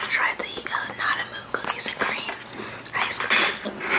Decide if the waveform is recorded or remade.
recorded